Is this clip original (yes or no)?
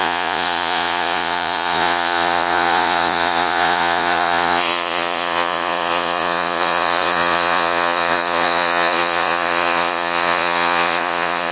no